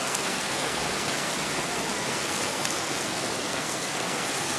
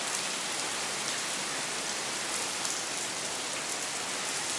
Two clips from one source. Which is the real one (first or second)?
second